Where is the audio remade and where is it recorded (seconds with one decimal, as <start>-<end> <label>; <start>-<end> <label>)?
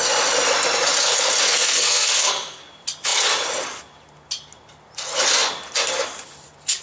0.0-1.4 recorded; 1.4-2.7 remade; 2.7-6.8 recorded